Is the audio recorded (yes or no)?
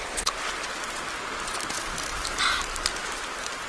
yes